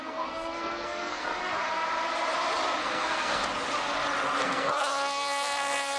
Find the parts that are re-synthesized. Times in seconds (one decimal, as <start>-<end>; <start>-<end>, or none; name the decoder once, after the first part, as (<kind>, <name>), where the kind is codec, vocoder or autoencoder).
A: 0.0-1.4 (codec, SNAC); 2.8-3.4; 4.4-6.0